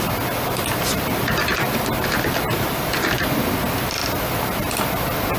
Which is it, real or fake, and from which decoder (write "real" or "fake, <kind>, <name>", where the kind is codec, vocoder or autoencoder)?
real